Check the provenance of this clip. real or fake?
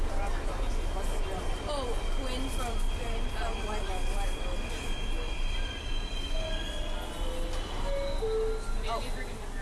real